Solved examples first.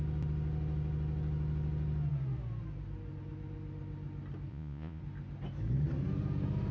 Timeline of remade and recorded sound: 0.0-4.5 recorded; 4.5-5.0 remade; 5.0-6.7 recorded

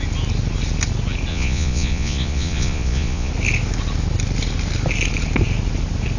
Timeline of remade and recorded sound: 0.0-1.3 recorded; 1.3-3.3 remade; 3.3-6.2 recorded